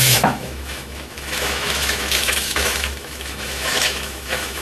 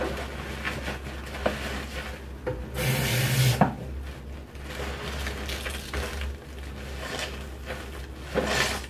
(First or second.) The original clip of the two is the second